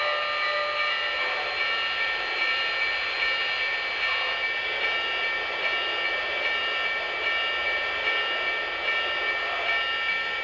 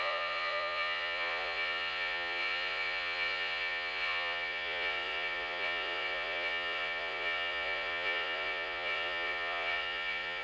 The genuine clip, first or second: first